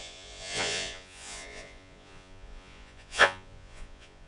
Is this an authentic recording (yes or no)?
no